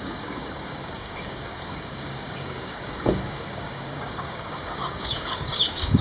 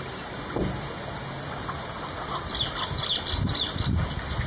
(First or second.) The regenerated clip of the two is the first